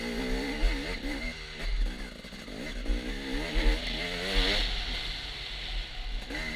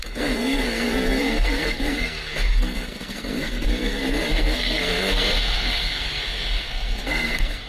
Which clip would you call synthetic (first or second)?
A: second